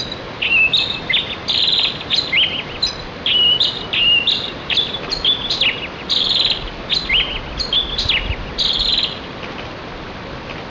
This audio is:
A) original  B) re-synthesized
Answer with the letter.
A